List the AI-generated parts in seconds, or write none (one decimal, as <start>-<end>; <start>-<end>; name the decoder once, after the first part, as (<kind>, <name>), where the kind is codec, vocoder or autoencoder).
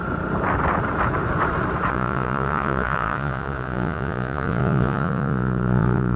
1.9-6.2 (vocoder, Vocos)